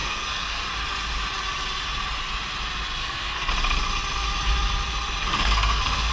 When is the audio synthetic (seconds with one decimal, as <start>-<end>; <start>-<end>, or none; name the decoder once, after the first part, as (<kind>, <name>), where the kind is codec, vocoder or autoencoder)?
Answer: 0.0-0.7 (codec, SNAC); 3.0-3.5; 5.2-6.1